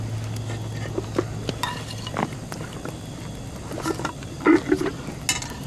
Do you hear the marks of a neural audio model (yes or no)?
no